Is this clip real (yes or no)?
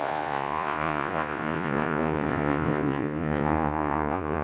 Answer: no